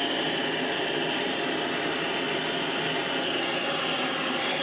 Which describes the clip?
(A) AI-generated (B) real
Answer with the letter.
B